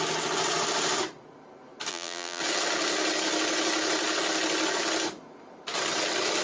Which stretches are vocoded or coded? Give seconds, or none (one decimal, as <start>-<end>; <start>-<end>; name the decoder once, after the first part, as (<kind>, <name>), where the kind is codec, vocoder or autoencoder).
1.9-2.4 (vocoder, BigVGAN v2)